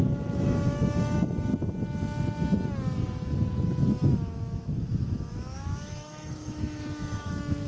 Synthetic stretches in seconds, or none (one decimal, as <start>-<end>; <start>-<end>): 0.0-1.5; 4.0-7.7

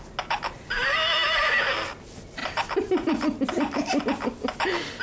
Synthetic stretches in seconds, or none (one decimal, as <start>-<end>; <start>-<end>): 2.4-4.0

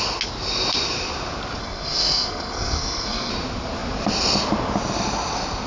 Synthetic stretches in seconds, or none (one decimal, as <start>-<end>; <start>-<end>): 1.6-3.3

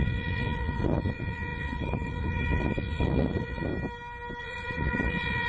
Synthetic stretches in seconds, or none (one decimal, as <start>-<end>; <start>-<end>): 0.0-3.7; 4.4-5.5

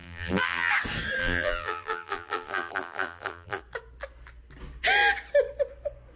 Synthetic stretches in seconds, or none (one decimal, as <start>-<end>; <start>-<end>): 0.0-0.7; 1.2-3.6